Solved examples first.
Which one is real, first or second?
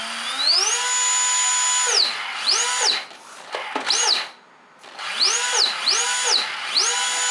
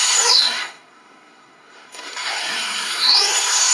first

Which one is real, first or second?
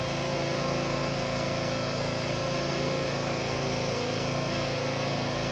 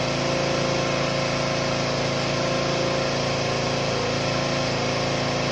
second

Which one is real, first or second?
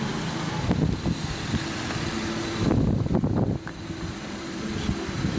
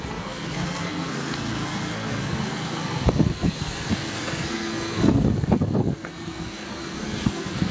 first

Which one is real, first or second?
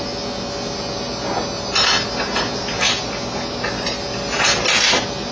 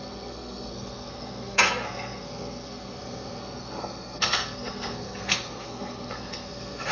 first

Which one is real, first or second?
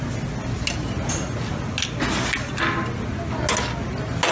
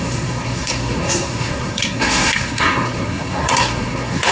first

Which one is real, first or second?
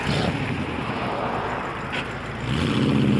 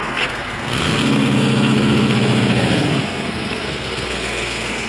first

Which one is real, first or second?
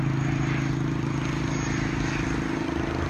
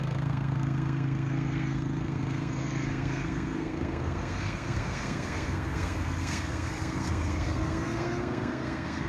first